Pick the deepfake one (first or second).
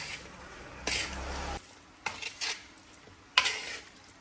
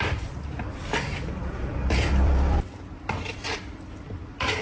second